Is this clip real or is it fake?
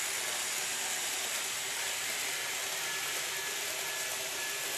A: real